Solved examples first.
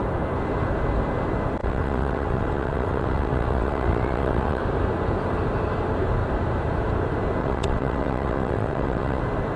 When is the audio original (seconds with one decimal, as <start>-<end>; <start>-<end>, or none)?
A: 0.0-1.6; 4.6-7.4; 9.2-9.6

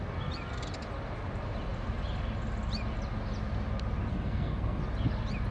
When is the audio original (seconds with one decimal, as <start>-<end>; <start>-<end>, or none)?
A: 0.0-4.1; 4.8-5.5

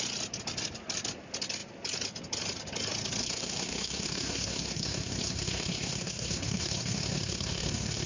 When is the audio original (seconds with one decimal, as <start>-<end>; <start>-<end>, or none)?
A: 0.0-3.2

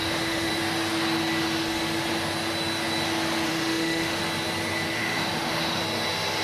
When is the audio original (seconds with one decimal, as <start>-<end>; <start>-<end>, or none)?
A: 0.5-3.5; 4.2-4.9; 5.8-6.4

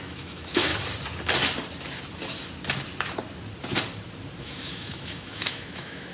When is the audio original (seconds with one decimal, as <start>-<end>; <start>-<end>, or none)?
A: 0.7-4.4

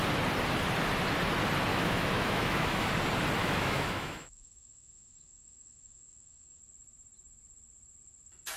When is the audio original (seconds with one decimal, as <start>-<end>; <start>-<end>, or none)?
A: 0.0-1.7; 2.9-3.4; 6.6-8.6

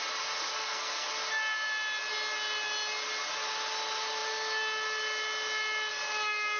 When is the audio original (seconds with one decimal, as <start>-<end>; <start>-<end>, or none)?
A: 0.0-0.4; 1.1-6.6

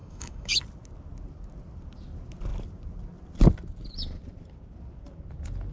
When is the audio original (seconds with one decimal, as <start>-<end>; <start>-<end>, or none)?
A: 0.6-5.7